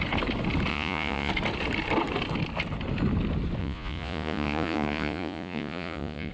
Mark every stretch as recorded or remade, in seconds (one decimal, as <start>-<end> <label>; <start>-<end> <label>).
0.0-0.7 recorded; 0.7-1.3 remade; 1.3-3.6 recorded; 3.6-6.3 remade